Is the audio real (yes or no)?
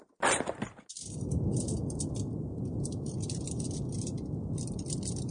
yes